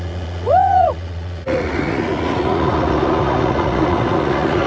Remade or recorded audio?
remade